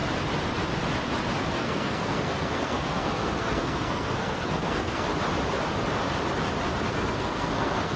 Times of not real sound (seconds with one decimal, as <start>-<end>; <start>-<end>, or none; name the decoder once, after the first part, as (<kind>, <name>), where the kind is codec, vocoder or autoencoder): 1.5-5.1 (codec, SNAC); 6.9-8.0